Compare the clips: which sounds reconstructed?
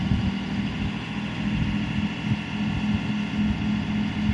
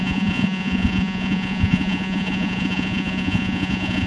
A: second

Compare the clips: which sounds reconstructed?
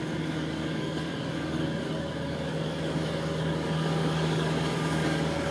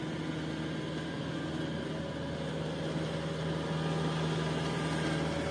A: first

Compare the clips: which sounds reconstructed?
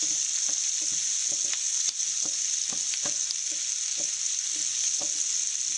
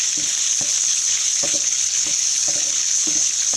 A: second